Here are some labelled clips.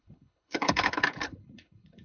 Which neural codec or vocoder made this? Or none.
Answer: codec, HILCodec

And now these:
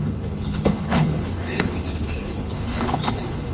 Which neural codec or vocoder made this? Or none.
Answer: codec, HILCodec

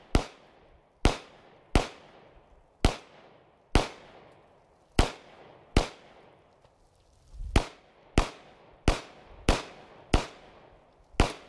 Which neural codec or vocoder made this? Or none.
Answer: none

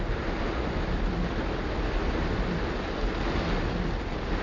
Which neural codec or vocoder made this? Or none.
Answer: none